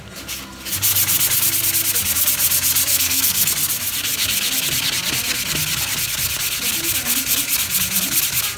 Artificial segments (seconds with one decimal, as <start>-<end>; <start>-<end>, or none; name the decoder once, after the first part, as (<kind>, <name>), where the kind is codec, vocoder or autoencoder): 2.9-3.5 (codec, SNAC)